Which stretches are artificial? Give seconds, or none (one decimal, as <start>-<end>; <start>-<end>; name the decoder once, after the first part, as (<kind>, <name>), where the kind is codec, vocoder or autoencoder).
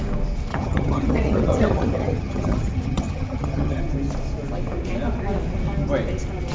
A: 0.5-3.8 (vocoder, HiFi-GAN)